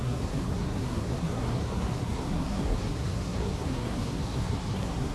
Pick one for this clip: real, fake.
fake